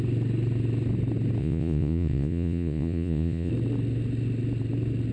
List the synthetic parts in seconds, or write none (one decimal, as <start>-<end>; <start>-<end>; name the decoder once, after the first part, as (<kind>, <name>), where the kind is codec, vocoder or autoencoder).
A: 1.4-3.5 (vocoder, Vocos)